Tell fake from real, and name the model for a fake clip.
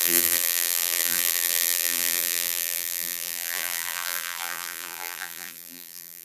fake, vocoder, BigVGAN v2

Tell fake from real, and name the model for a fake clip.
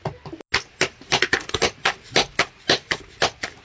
real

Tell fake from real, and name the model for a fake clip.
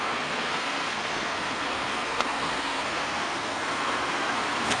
fake, codec, SNAC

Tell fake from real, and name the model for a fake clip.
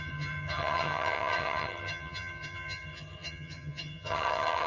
fake, vocoder, HiFi-GAN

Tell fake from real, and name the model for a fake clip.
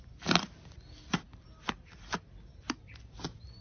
real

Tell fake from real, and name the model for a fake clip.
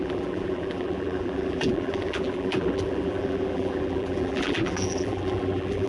fake, vocoder, BigVGAN v2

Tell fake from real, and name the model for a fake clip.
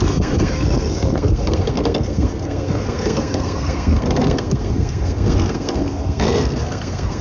fake, codec, SNAC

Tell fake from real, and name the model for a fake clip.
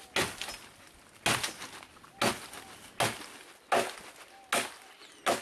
real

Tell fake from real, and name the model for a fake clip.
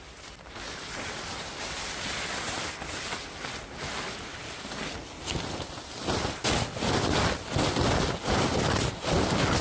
real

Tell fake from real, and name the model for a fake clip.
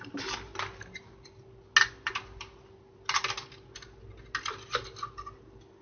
real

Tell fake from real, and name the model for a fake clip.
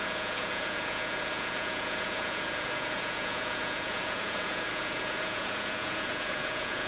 fake, vocoder, Vocos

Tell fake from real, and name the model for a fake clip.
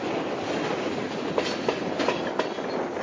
real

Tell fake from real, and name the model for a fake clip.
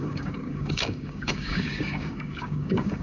fake, codec, DAC